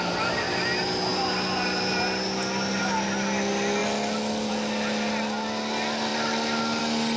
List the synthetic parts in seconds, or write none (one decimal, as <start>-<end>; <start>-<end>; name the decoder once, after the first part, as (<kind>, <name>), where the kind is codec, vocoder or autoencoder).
none